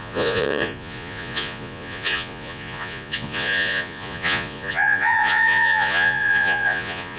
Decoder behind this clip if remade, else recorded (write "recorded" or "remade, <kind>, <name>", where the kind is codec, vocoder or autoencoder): remade, vocoder, Vocos